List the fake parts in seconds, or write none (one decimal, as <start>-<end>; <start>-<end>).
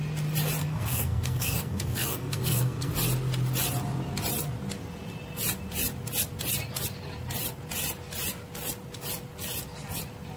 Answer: 0.6-2.9